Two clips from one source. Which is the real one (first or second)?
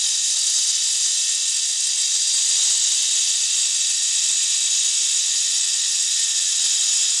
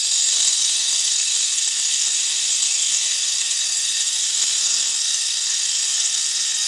first